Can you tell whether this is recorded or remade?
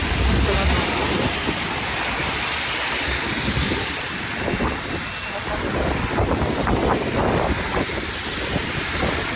remade